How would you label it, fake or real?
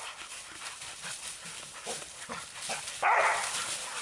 real